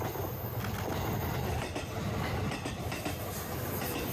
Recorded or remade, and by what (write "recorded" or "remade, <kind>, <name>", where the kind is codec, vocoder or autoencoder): recorded